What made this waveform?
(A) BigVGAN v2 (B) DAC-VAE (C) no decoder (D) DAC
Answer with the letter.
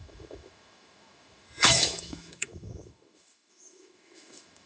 B